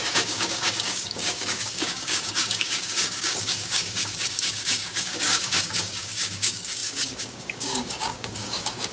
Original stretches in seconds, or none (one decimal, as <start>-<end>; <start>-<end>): none